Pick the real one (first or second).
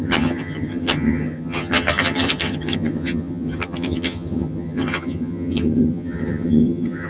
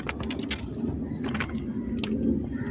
second